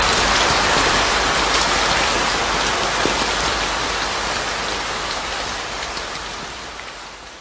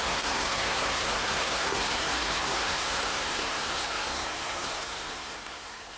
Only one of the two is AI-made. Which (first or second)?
second